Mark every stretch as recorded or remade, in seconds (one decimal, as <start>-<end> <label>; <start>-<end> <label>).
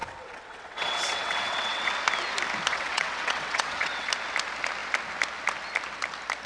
0.0-1.9 remade; 1.9-2.7 recorded; 2.7-4.1 remade; 4.1-6.5 recorded